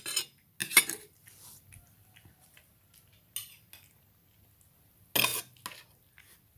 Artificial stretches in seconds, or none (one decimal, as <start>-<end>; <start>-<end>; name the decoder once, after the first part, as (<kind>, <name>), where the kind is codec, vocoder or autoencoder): 0.6-2.6 (vocoder, BigVGAN v2)